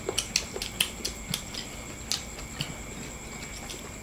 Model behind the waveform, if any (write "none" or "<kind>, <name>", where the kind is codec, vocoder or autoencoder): none